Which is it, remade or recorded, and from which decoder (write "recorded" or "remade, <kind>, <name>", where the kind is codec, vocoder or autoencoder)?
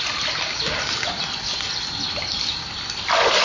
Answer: recorded